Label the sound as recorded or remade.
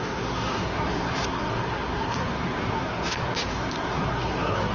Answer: remade